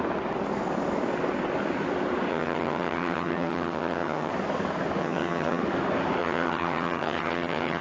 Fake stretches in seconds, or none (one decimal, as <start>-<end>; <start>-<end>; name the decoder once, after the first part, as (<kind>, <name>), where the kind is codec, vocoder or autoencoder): 2.3-4.3 (vocoder, HiFi-GAN); 5.0-5.6; 6.2-7.8